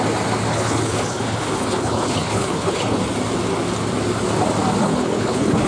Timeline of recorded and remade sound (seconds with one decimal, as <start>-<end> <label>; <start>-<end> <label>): 0.0-0.5 recorded; 0.5-3.0 remade; 3.0-4.8 recorded; 4.8-5.7 remade

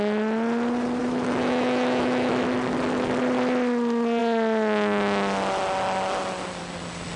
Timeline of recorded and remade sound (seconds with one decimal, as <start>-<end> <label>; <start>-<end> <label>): 0.0-1.0 recorded; 1.0-2.3 remade; 2.3-7.2 recorded

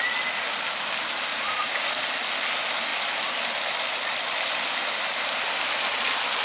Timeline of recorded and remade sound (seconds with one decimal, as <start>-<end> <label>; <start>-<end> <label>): 0.0-1.3 recorded; 1.3-1.9 remade; 1.9-6.4 recorded